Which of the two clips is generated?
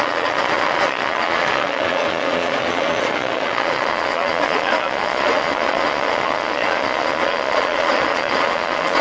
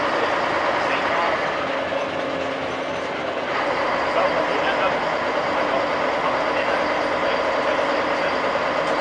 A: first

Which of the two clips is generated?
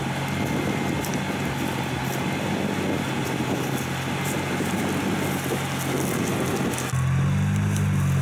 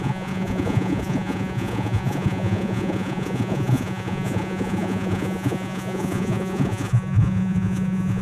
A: second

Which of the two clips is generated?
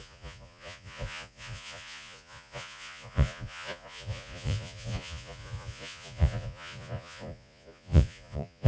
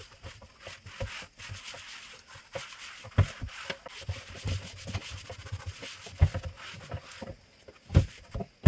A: first